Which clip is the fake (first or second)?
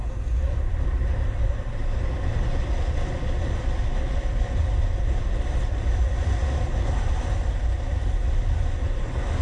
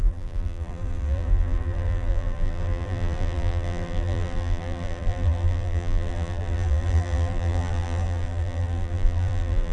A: second